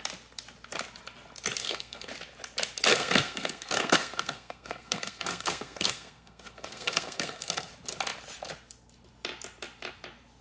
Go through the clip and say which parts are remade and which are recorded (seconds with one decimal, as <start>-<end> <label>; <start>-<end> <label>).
0.0-1.6 recorded; 1.6-2.1 remade; 2.1-2.9 recorded; 2.9-7.7 remade; 7.7-10.4 recorded